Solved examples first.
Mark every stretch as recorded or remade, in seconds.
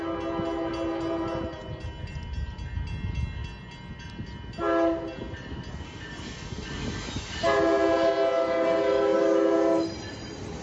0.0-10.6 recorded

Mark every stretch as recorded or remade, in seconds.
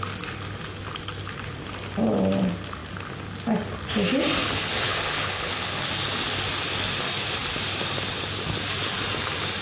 0.0-4.4 recorded; 4.4-5.9 remade; 5.9-9.6 recorded